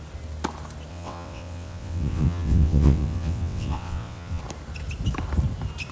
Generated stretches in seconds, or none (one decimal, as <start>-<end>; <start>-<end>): 0.9-4.4